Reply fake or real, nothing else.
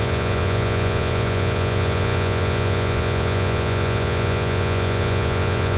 fake